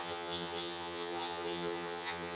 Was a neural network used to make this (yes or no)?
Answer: yes